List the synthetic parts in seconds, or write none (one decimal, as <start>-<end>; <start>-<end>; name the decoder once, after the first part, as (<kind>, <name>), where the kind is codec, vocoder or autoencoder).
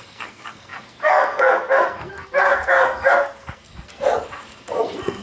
0.0-5.2 (codec, SNAC)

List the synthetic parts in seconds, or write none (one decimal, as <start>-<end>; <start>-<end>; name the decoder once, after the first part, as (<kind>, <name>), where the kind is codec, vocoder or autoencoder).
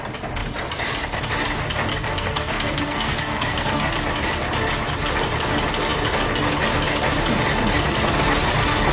1.9-3.9 (codec, SNAC)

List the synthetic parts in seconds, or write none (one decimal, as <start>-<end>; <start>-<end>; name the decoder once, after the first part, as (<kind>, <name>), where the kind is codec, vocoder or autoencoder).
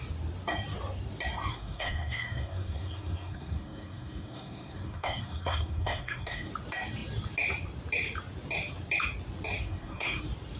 1.5-6.5 (codec, SNAC); 9.6-10.2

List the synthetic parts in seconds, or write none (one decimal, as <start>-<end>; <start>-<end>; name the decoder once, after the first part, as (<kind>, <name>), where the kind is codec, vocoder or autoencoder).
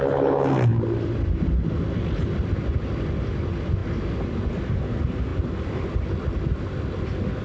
none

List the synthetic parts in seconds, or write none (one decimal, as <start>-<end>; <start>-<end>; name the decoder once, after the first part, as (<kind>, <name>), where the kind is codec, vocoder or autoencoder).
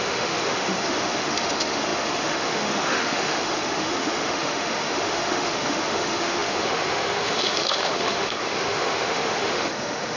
0.0-10.2 (autoencoder, DAC-VAE)